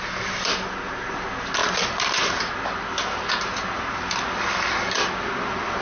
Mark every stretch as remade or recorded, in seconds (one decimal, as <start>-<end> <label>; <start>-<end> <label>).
0.0-5.8 recorded

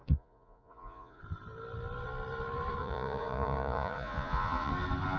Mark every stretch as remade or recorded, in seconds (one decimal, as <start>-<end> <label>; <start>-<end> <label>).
0.0-1.2 remade; 1.2-2.8 recorded; 2.8-4.7 remade; 4.7-5.2 recorded

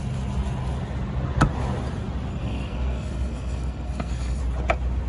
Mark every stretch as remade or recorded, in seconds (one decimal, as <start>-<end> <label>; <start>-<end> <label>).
0.0-2.3 recorded; 2.3-4.4 remade; 4.4-5.1 recorded

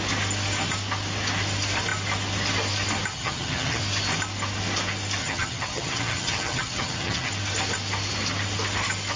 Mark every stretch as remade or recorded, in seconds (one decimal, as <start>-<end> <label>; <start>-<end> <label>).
0.0-3.1 recorded; 3.1-3.8 remade; 3.8-5.2 recorded; 5.2-7.3 remade; 7.3-9.2 recorded

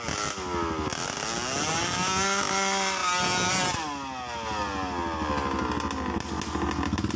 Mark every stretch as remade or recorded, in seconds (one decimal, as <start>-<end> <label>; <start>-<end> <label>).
0.0-7.2 recorded

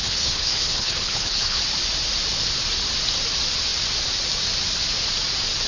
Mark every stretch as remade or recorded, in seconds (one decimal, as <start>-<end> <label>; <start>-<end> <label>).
0.0-1.6 remade; 1.6-5.7 recorded

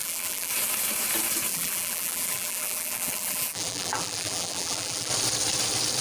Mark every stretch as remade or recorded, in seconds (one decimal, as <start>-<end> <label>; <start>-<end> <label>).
0.0-0.5 remade; 0.5-1.5 recorded; 1.5-5.1 remade; 5.1-6.0 recorded

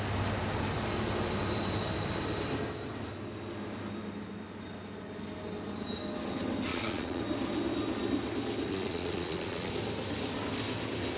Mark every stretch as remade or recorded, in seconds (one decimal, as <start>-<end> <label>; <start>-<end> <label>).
0.0-6.7 recorded; 6.7-7.2 remade; 7.2-8.7 recorded; 8.7-9.7 remade; 9.7-11.2 recorded